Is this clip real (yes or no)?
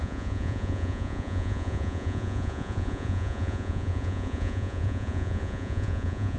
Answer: no